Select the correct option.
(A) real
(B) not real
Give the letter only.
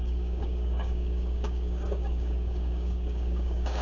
B